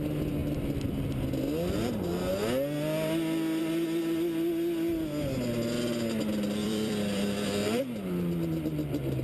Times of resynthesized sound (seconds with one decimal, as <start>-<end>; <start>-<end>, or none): 6.6-7.8